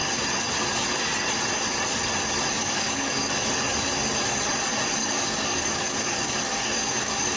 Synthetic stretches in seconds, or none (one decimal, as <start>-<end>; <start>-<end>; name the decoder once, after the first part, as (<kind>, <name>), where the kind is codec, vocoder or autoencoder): 2.6-3.3 (codec, DAC); 5.0-7.4